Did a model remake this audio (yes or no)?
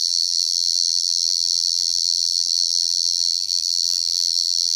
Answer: yes